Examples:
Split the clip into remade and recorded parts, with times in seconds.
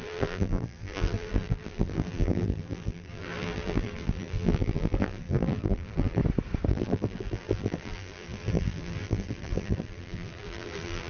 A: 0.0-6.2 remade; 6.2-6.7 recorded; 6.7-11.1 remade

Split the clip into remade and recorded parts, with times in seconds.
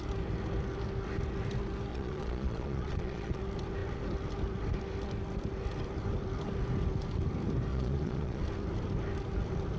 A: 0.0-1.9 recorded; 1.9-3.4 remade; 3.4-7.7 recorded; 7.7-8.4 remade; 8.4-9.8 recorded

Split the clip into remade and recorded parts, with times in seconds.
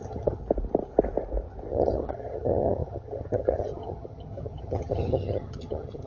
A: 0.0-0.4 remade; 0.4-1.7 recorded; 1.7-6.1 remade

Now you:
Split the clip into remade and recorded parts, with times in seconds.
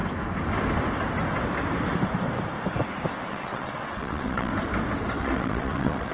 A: 0.0-3.3 recorded; 3.3-4.5 remade; 4.5-5.2 recorded; 5.2-6.1 remade